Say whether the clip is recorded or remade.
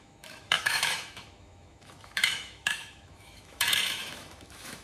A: remade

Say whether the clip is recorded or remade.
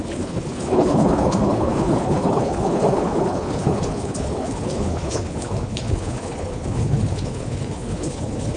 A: remade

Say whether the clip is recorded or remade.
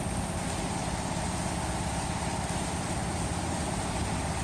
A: recorded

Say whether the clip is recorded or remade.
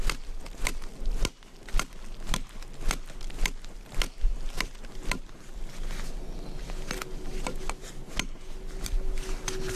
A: recorded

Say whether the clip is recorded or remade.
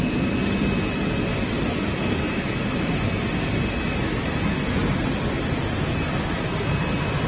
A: recorded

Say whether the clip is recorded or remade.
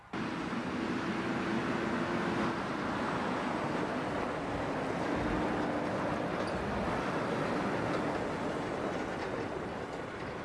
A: recorded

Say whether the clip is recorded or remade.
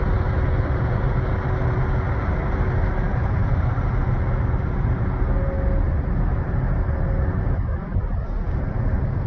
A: recorded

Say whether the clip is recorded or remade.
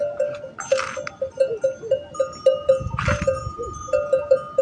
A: recorded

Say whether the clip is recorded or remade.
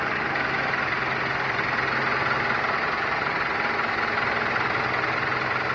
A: recorded